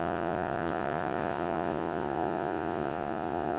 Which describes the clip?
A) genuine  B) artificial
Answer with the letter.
B